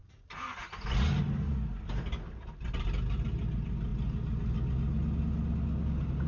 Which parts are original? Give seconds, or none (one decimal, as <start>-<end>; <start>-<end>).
0.0-6.3